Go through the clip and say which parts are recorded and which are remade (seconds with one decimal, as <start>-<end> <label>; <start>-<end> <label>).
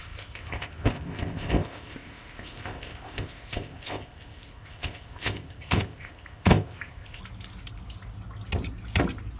0.0-7.2 remade; 7.2-9.4 recorded